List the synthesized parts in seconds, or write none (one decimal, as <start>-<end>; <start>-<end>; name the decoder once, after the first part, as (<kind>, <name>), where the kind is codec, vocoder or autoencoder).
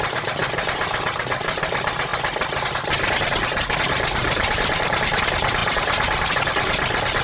0.0-2.1 (vocoder, BigVGAN v2); 3.8-7.2